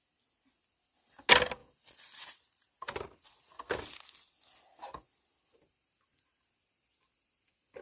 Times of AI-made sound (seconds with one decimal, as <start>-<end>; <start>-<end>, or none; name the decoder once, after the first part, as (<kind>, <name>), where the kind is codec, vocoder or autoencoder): 1.6-3.8 (vocoder, BigVGAN v2)

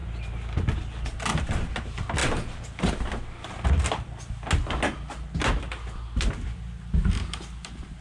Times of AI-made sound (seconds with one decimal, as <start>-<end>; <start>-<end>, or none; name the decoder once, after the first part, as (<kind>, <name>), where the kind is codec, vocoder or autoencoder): none

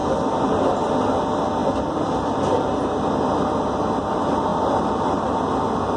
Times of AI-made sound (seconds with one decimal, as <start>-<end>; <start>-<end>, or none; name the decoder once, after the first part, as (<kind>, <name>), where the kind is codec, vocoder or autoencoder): 0.0-0.9 (vocoder, BigVGAN v2); 1.6-3.1; 4.5-5.2

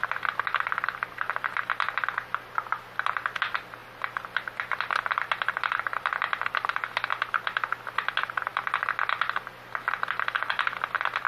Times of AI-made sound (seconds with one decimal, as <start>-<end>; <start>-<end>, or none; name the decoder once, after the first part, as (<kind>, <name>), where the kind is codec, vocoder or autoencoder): none

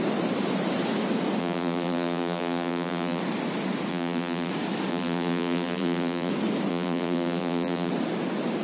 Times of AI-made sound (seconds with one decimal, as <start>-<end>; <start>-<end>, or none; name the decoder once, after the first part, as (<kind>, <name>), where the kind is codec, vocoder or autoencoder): 1.4-3.2 (vocoder, BigVGAN v2); 3.9-4.5; 4.9-6.3; 6.7-7.9